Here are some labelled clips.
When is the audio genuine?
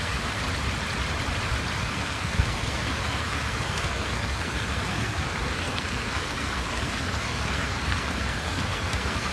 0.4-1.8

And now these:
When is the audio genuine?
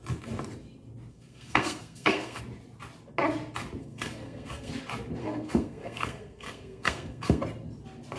0.0-1.1; 2.4-3.8; 4.7-5.2; 7.4-8.2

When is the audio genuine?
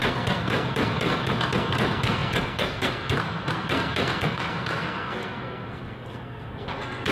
none